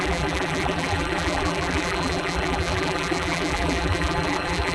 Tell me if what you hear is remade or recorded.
remade